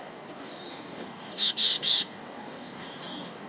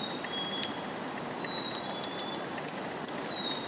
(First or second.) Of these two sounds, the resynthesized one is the first